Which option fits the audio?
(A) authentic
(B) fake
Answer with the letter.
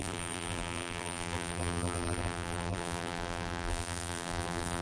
B